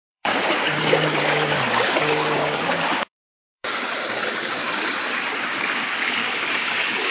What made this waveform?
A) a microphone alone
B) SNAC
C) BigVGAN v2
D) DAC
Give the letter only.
D